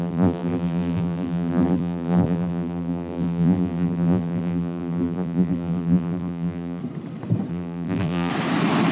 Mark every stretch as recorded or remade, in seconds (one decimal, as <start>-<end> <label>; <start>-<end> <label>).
0.0-6.8 remade; 6.8-7.5 recorded; 7.5-8.3 remade; 8.3-8.9 recorded